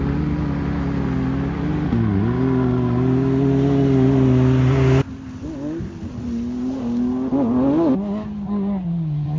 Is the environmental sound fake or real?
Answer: real